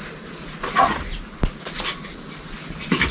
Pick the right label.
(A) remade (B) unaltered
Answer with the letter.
B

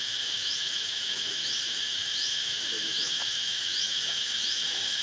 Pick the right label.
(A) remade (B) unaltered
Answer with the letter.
A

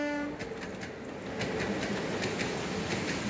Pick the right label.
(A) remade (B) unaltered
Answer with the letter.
B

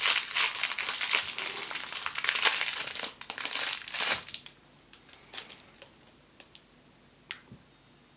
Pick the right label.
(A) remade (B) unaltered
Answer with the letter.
B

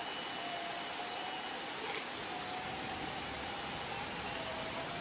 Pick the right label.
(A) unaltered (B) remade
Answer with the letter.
A